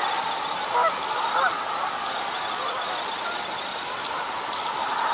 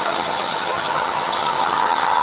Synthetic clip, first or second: second